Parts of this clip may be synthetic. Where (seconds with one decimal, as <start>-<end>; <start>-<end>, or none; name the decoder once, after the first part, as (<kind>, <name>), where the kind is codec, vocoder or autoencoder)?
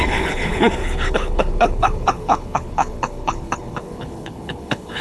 0.0-5.0 (codec, HILCodec)